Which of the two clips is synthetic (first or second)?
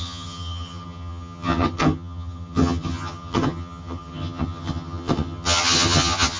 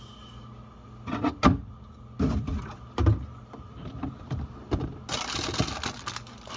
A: first